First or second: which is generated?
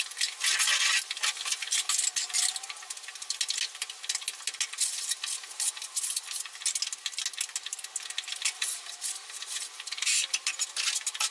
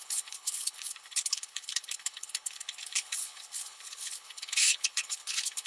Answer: second